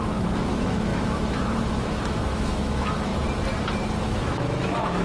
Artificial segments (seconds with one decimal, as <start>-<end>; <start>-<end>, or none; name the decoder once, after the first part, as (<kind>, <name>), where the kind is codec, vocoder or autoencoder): 0.0-3.1 (autoencoder, DAC-VAE); 4.0-5.0